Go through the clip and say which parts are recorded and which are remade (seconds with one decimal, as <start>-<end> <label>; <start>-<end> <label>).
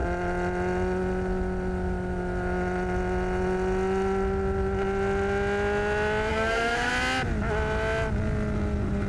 0.0-6.3 recorded; 6.3-6.9 remade; 6.9-9.1 recorded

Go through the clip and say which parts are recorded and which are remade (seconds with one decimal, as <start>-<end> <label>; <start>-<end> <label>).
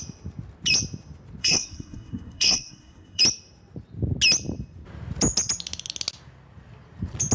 0.0-1.4 recorded; 1.4-3.2 remade; 3.2-7.3 recorded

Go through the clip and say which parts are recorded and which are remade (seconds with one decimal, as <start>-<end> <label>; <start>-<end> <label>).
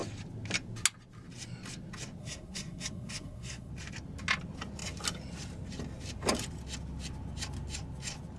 0.0-2.2 recorded; 2.2-3.7 remade; 3.7-8.4 recorded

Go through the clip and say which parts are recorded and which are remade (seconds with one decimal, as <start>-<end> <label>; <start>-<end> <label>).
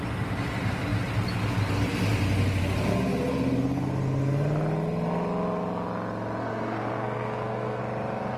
0.0-6.4 recorded; 6.4-7.8 remade; 7.8-8.4 recorded